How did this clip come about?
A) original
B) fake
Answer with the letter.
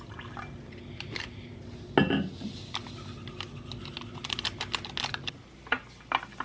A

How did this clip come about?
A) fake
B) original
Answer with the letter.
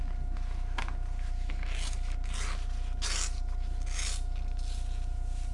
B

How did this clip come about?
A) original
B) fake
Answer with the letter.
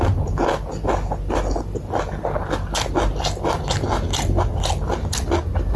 A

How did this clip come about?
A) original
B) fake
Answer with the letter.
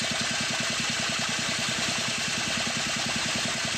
A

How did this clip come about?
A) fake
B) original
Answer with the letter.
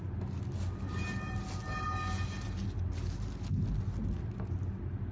B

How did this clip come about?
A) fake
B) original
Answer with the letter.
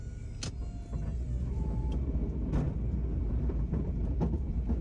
B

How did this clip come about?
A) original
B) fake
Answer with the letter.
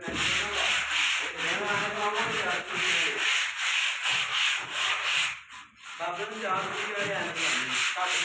A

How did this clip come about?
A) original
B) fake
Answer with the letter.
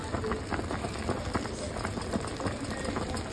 A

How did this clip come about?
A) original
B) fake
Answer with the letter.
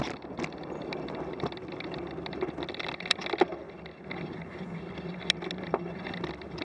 A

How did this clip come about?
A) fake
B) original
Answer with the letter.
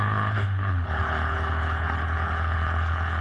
A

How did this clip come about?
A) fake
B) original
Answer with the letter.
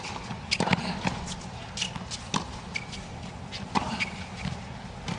B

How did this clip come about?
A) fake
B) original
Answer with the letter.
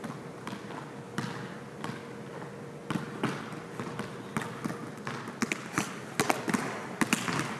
B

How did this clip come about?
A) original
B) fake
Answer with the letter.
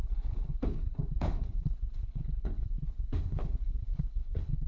B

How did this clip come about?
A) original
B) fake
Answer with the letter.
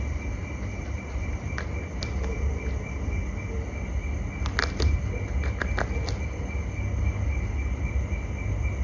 A